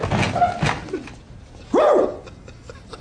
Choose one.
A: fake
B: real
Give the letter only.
B